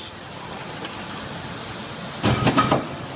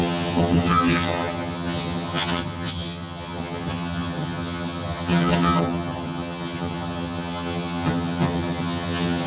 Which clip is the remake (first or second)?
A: second